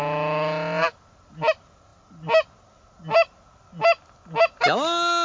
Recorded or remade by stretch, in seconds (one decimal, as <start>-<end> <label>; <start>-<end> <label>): 0.0-5.2 recorded